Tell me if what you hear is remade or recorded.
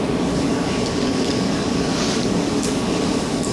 remade